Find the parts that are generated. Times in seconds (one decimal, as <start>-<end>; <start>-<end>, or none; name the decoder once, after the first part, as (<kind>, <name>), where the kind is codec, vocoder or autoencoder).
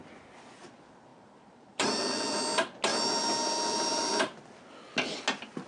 1.1-2.4 (vocoder, BigVGAN v2); 2.9-4.2